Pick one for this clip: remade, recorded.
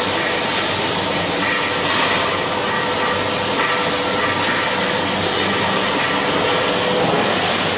recorded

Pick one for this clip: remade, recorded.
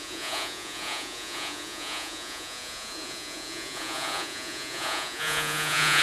remade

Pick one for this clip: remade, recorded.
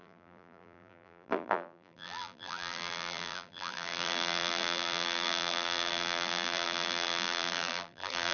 remade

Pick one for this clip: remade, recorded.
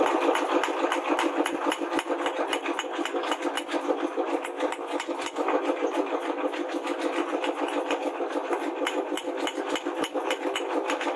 recorded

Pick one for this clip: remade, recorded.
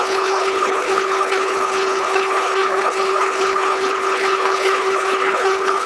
remade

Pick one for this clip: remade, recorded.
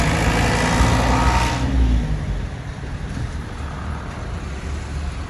recorded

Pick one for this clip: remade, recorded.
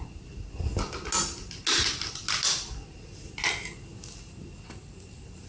recorded